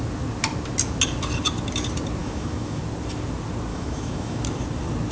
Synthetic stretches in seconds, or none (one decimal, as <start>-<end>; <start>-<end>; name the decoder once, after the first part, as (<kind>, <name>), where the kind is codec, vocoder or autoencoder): 2.2-2.8 (autoencoder, DAC-VAE); 3.7-4.4